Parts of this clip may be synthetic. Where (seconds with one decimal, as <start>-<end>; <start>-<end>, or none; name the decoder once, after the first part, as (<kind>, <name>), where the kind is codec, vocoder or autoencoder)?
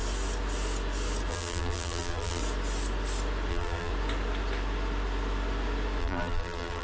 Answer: 1.3-2.4 (vocoder, BigVGAN v2); 3.5-3.9; 6.0-6.8